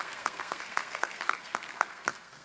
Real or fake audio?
fake